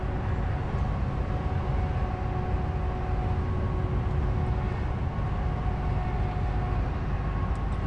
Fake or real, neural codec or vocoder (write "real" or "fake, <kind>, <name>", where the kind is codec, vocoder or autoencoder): real